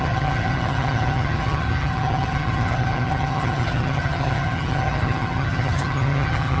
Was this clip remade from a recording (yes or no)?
yes